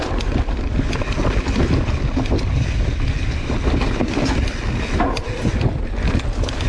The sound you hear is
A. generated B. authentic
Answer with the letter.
B